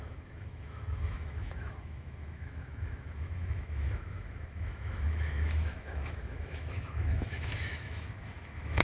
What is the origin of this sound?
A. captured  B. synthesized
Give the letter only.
B